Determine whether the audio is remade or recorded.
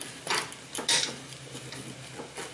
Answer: recorded